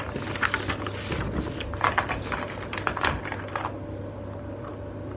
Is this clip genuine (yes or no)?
yes